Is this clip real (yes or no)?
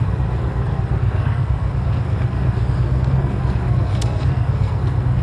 no